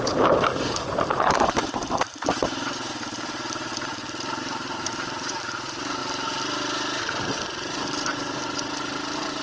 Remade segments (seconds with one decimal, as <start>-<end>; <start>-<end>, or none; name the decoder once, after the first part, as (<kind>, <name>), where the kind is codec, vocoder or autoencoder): 0.0-3.7 (vocoder, BigVGAN v2); 4.4-6.0; 7.0-9.4